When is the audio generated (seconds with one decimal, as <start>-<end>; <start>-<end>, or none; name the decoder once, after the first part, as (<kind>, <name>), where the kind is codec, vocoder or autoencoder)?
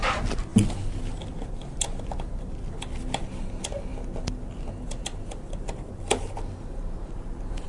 none